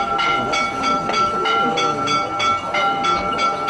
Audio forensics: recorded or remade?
recorded